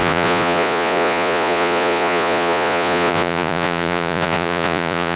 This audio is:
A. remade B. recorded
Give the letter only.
A